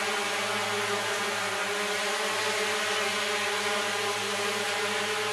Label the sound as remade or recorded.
recorded